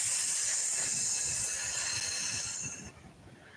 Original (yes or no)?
yes